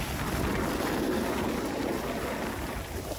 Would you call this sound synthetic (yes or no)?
no